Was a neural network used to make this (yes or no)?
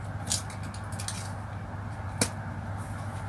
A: no